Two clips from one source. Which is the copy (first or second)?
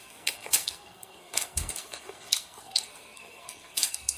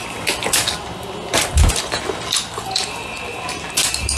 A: first